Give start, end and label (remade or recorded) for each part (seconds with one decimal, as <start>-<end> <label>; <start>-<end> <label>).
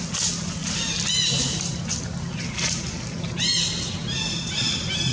0.0-5.1 recorded